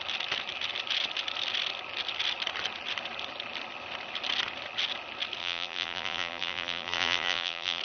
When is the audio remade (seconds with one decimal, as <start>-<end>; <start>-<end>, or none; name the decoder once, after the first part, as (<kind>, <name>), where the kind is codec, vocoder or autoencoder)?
5.4-7.8 (vocoder, BigVGAN v2)